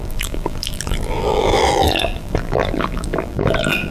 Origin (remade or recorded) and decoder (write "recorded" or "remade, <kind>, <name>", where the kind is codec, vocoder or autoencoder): remade, vocoder, BigVGAN v2